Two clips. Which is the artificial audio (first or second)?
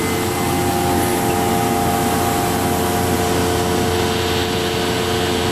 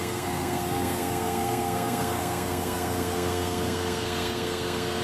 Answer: second